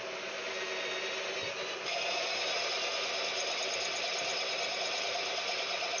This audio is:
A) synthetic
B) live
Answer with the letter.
B